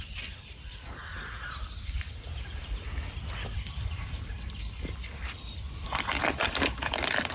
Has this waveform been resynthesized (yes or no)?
yes